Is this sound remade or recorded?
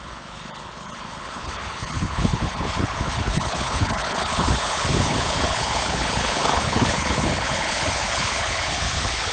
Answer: remade